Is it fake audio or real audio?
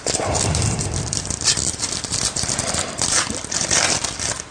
fake